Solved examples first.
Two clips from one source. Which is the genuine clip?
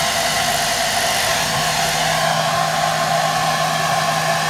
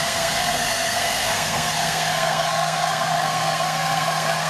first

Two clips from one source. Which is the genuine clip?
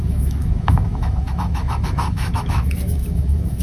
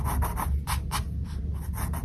second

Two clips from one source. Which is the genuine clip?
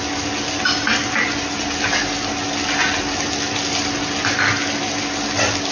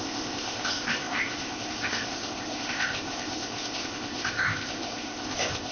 first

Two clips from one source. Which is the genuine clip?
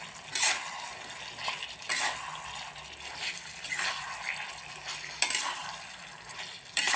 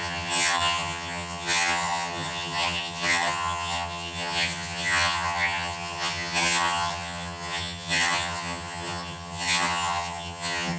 first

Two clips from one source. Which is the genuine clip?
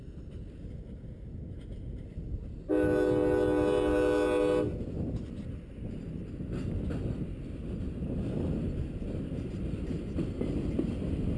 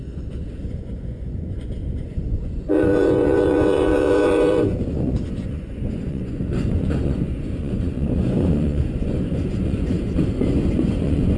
first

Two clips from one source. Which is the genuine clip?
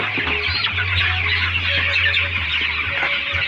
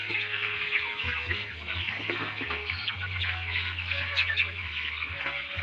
first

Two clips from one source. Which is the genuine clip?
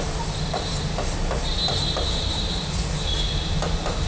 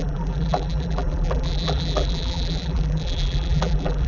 first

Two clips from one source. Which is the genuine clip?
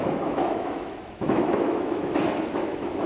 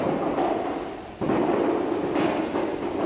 second